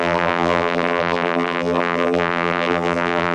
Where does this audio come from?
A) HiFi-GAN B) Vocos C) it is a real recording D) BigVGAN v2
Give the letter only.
D